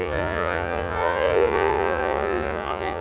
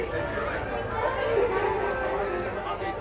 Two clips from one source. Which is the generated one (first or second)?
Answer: first